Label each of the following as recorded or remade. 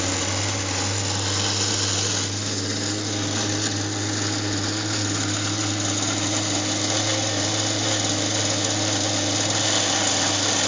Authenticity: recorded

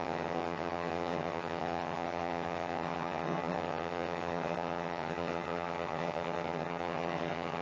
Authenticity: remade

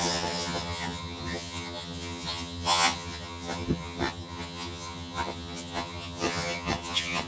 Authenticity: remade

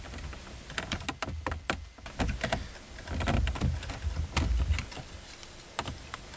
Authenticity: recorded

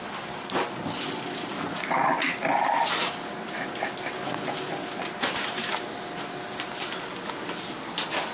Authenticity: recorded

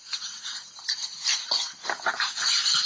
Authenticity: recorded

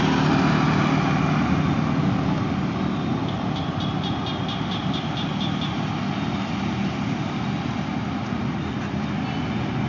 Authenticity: recorded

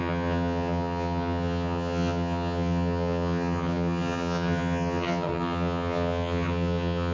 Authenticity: remade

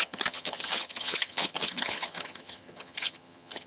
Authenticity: remade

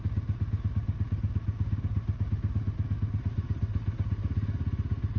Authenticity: recorded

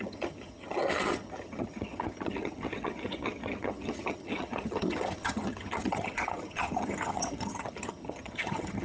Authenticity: remade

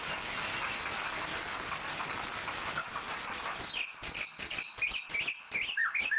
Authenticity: recorded